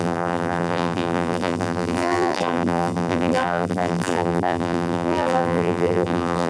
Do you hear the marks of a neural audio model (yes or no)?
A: yes